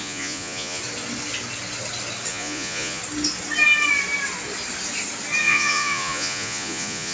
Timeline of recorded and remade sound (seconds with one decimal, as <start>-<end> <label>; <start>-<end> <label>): 0.0-0.8 remade; 0.8-2.3 recorded; 2.3-3.0 remade; 3.0-5.4 recorded; 5.4-7.1 remade